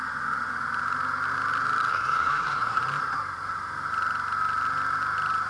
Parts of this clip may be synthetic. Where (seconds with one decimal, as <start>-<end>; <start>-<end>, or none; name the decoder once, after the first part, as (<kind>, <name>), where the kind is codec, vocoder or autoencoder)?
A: 1.9-2.8 (codec, SNAC)